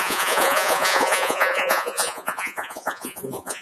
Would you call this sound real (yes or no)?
no